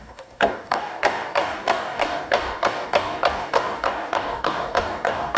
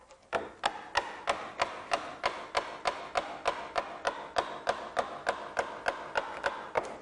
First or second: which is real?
second